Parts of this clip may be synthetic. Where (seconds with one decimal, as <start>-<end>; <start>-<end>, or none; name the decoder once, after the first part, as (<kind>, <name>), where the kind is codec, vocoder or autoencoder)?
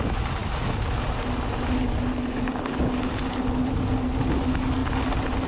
none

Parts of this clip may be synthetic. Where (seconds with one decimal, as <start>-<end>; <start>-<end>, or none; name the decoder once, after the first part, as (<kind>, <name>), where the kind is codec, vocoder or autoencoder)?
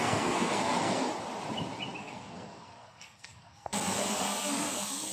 0.0-1.1 (codec, SNAC); 2.0-5.1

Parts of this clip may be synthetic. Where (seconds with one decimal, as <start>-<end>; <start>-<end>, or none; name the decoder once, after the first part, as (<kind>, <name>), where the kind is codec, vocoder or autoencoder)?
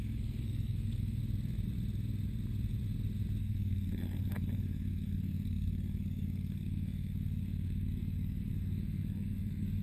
0.0-1.2 (codec, SNAC); 3.4-9.8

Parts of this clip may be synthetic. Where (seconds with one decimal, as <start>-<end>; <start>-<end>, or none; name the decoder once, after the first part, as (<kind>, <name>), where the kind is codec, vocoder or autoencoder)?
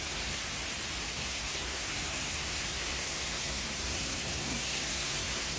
0.0-0.4 (codec, SNAC); 1.0-5.6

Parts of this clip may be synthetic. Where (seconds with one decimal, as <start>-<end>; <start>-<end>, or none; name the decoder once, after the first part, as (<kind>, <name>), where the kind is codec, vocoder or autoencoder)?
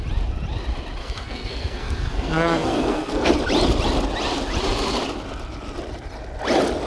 1.0-3.3 (codec, SNAC)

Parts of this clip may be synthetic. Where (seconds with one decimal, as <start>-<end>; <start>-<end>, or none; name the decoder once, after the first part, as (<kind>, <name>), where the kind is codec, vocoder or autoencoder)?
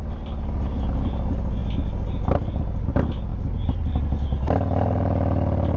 none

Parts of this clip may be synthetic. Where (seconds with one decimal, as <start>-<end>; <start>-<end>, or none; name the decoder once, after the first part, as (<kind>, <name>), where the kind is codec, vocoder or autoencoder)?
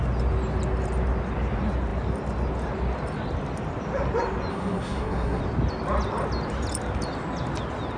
4.5-5.4 (codec, SNAC)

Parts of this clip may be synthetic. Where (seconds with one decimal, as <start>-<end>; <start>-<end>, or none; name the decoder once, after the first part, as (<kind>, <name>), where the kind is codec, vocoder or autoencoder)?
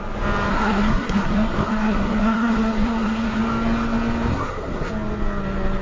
0.5-3.4 (codec, SNAC); 4.3-4.9